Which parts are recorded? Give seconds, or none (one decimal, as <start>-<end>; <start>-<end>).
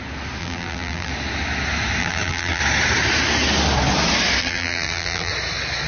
0.0-0.4; 1.1-2.0; 2.6-4.4; 5.3-5.9